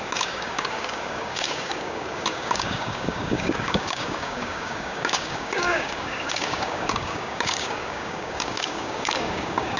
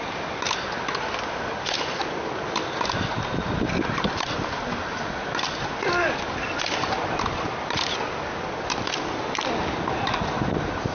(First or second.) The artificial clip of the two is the first